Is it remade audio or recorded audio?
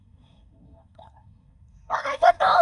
remade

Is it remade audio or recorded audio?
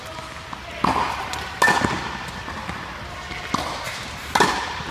recorded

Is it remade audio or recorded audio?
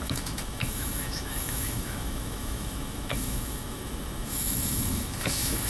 remade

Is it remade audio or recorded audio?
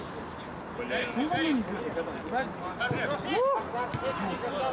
recorded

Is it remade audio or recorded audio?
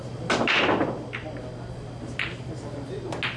recorded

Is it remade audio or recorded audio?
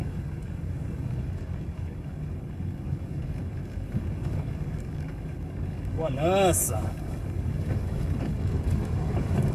remade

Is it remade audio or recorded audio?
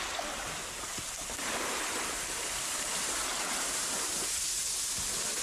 recorded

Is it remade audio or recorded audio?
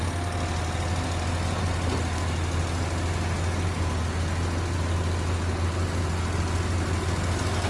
recorded